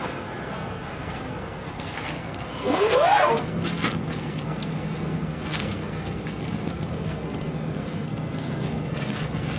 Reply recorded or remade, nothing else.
remade